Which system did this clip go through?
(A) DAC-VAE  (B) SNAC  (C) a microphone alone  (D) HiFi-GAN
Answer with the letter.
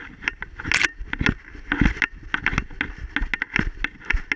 C